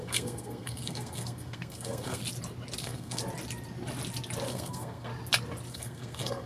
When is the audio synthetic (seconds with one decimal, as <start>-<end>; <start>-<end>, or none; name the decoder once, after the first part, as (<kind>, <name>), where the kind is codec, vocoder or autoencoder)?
0.0-2.2 (codec, SNAC); 2.8-3.2; 4.5-5.1; 5.7-6.5

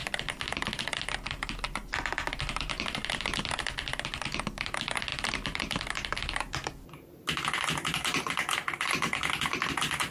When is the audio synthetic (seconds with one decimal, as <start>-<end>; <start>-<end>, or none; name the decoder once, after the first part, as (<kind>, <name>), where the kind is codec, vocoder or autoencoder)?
none

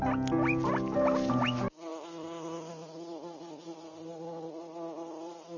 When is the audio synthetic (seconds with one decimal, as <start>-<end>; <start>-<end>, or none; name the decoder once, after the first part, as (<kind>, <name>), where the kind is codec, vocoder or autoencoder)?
none

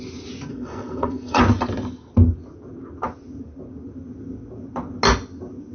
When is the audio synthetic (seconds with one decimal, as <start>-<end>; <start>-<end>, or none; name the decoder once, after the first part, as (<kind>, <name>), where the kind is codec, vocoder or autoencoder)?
0.5-1.4 (codec, SNAC)

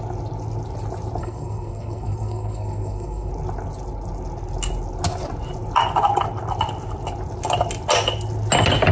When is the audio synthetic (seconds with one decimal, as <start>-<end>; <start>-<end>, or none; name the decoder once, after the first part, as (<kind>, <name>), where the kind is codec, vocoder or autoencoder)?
1.2-3.3 (codec, SNAC)

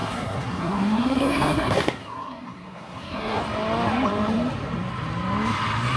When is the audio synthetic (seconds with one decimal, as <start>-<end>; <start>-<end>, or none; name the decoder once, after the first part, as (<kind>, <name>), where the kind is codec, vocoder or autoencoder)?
0.0-3.4 (codec, SNAC)